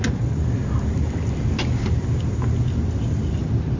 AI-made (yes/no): no